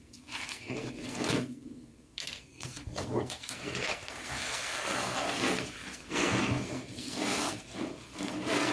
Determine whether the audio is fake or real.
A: fake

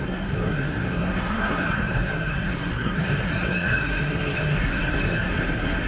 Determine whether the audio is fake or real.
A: fake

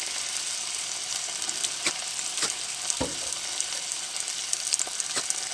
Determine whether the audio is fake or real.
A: real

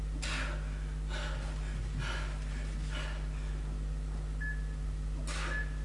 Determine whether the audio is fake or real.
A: real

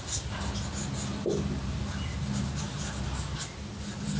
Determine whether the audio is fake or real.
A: real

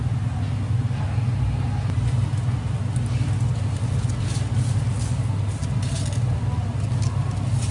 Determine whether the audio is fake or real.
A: real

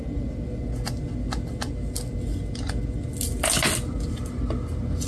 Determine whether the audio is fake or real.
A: real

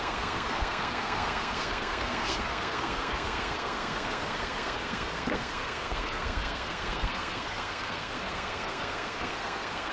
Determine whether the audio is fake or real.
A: fake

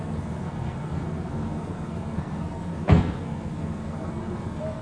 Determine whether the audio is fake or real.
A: fake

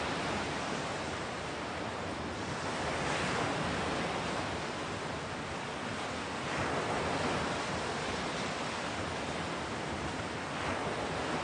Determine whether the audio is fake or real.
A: real